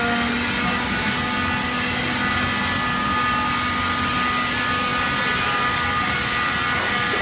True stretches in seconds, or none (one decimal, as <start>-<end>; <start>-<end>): 0.0-7.2